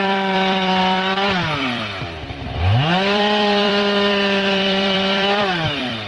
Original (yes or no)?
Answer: no